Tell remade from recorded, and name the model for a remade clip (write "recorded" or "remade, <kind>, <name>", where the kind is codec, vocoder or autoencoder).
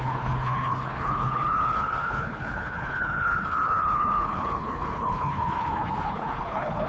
remade, codec, HILCodec